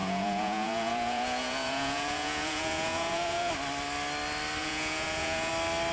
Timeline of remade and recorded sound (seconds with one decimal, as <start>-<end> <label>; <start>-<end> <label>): 0.0-3.5 remade; 3.5-4.6 recorded; 4.6-5.5 remade; 5.5-5.9 recorded